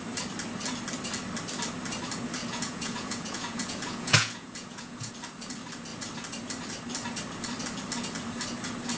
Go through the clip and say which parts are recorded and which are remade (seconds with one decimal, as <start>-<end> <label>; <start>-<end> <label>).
0.0-2.4 recorded; 2.4-5.1 remade; 5.1-9.0 recorded